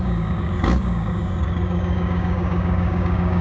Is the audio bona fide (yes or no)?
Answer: no